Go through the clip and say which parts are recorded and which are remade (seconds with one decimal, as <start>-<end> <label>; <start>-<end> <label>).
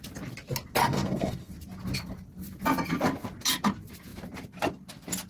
0.0-0.8 recorded; 0.8-1.5 remade; 1.5-5.3 recorded